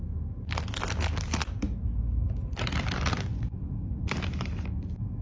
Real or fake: real